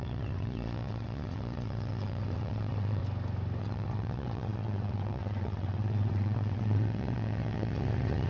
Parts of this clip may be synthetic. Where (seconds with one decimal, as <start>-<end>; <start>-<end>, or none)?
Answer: 0.0-3.0; 3.6-8.3